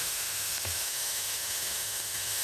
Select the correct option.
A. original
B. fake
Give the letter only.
B